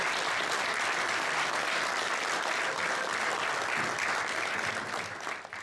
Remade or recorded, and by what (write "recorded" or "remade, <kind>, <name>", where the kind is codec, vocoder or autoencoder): recorded